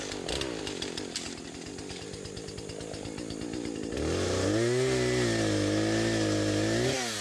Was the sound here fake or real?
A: real